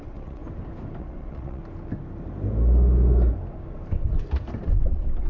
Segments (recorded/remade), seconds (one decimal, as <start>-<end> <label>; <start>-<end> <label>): 0.0-0.4 remade; 0.4-1.0 recorded; 1.0-1.6 remade; 1.6-4.8 recorded; 4.8-5.3 remade